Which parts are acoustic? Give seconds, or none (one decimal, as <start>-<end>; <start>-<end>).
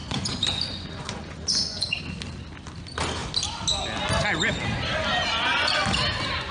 2.0-6.5